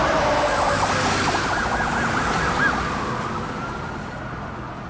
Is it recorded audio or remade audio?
recorded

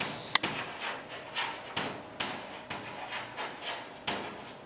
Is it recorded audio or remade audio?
recorded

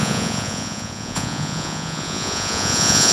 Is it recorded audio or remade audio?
remade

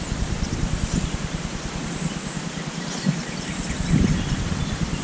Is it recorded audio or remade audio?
remade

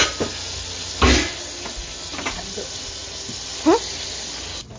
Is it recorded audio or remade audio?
recorded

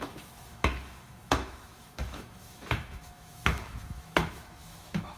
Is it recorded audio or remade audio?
remade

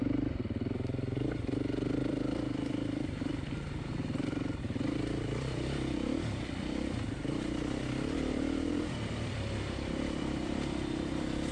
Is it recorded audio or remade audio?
remade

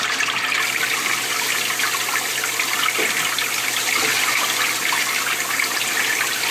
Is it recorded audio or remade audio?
recorded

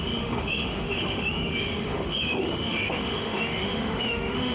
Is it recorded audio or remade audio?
remade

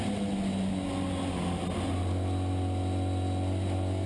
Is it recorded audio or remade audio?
recorded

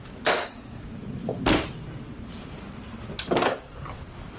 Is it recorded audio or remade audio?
recorded